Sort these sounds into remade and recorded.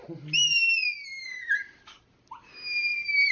recorded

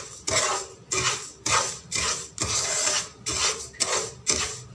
recorded